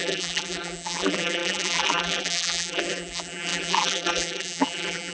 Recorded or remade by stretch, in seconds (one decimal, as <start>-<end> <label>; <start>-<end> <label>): 0.0-5.1 remade